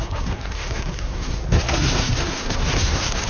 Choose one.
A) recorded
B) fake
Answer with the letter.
B